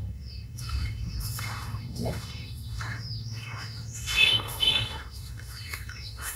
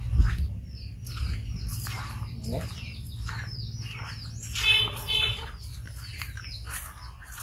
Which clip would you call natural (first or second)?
second